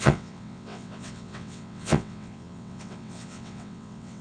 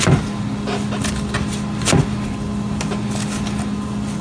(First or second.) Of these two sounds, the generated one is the first